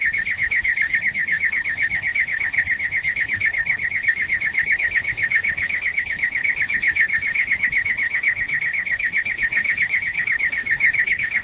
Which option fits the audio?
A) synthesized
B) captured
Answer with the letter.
A